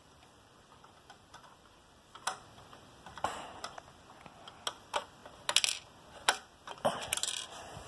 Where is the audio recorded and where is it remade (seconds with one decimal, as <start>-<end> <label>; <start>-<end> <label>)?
0.0-3.1 remade; 3.1-4.7 recorded; 4.7-5.2 remade; 5.2-7.9 recorded